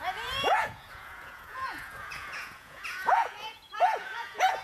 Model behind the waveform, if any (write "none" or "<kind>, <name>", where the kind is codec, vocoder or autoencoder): vocoder, Vocos